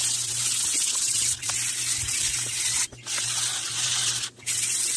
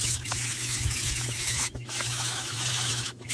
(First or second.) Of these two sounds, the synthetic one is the second